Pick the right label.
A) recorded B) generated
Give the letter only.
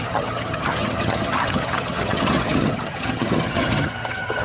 B